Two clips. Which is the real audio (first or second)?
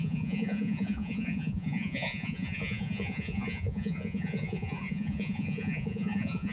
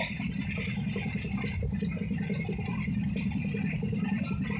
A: second